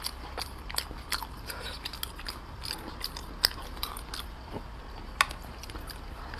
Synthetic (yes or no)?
no